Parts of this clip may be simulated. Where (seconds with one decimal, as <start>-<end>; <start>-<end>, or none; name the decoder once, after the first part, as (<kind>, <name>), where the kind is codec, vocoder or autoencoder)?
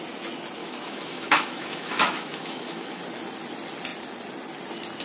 0.6-3.0 (autoencoder, DAC-VAE)